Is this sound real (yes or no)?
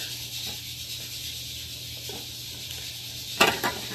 yes